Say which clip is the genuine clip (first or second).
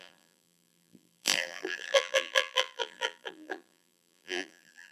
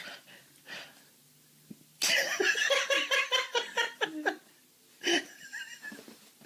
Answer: second